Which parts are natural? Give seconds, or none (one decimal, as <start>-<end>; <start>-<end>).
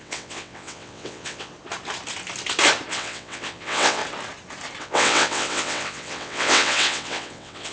1.5-2.9; 4.0-4.8